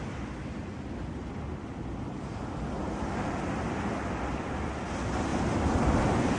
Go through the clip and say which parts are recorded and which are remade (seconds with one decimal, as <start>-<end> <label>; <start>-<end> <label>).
0.0-6.4 recorded